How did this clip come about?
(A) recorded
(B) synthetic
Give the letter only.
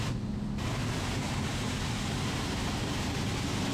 A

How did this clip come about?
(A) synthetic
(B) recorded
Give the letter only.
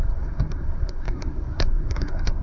A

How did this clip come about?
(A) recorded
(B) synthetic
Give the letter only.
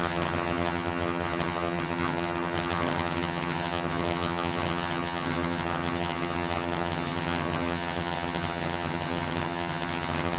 B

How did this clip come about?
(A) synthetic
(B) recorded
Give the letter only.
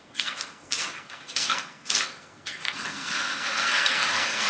A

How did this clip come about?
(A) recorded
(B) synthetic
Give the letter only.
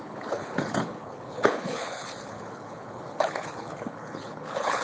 B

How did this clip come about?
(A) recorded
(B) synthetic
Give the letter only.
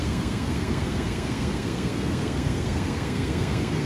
B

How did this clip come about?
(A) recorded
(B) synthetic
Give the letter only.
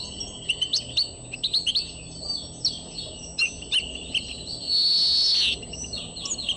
A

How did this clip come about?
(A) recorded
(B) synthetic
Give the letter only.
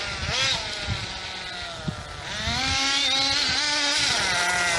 A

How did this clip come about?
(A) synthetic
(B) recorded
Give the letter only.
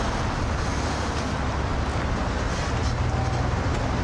B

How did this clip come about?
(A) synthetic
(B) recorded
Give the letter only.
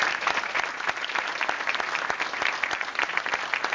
B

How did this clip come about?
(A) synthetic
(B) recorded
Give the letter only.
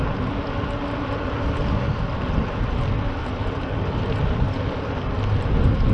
B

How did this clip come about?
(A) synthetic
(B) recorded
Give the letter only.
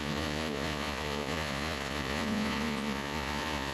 A